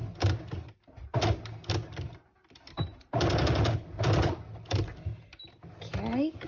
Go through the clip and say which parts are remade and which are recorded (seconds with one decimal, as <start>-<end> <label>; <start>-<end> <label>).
0.0-6.5 recorded